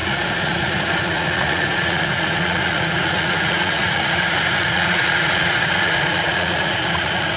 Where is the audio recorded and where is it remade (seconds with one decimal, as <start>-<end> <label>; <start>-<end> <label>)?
0.0-7.4 remade